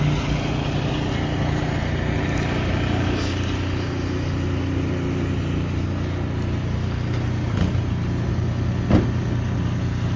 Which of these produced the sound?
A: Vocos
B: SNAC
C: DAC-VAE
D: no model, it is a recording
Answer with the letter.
D